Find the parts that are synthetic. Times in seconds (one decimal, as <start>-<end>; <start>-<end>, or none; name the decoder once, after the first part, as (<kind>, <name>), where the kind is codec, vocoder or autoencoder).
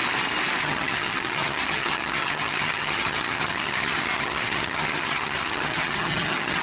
0.6-6.6 (vocoder, HiFi-GAN)